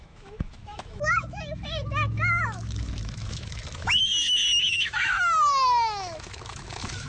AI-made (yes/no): yes